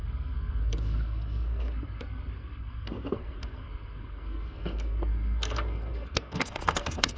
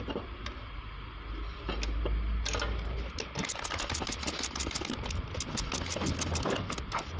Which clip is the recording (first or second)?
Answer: second